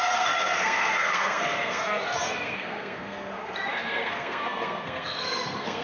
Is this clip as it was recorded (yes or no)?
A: no